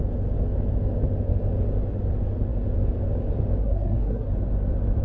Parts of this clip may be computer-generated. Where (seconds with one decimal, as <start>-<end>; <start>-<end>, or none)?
3.6-4.3